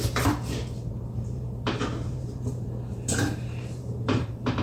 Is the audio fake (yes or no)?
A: yes